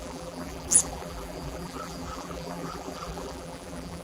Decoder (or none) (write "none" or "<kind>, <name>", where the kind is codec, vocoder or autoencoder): vocoder, BigVGAN v2